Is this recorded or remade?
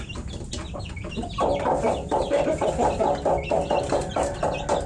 recorded